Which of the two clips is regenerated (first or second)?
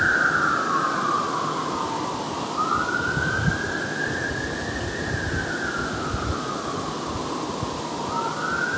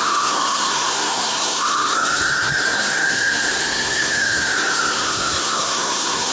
second